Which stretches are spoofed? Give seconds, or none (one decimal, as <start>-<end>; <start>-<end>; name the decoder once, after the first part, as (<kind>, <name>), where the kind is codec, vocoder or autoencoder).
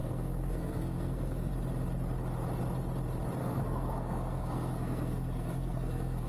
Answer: 0.0-1.5 (codec, SNAC); 3.4-6.3